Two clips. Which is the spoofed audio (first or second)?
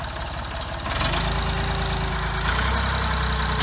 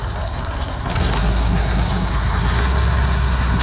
second